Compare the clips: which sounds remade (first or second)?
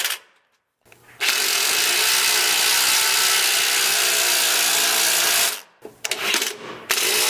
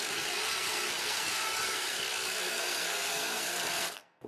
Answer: second